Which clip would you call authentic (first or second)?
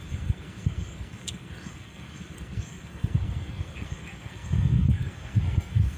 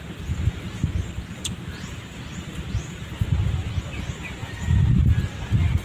second